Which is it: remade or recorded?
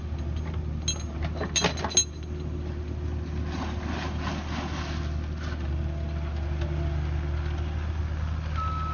recorded